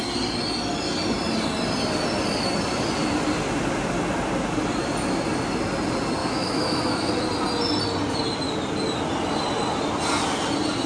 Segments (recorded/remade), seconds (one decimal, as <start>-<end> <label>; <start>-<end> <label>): 0.0-6.2 recorded; 6.2-7.1 remade; 7.1-10.9 recorded